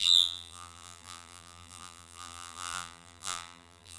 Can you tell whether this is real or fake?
fake